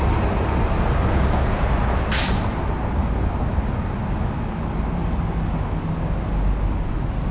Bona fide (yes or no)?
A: yes